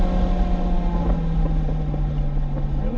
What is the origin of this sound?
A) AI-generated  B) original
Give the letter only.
B